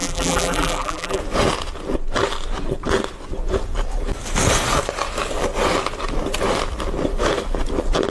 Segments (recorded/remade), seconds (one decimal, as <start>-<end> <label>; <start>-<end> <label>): 0.0-1.2 remade; 1.2-8.1 recorded